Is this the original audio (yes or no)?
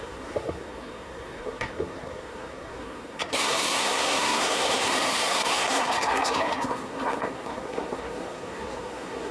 no